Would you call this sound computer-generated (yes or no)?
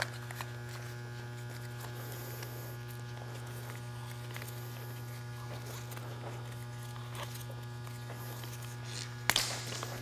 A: no